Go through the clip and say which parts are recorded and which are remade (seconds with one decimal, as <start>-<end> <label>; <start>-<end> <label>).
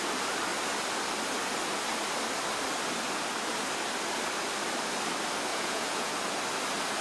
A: 0.0-5.5 recorded; 5.5-6.1 remade; 6.1-7.0 recorded